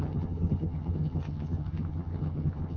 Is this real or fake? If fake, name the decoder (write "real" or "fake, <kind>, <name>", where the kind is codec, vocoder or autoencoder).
fake, vocoder, HiFi-GAN